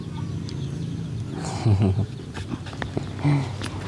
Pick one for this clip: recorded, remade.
recorded